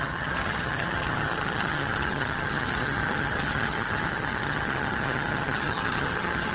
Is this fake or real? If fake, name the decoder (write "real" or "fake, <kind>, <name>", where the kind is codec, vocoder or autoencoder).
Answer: fake, vocoder, HiFi-GAN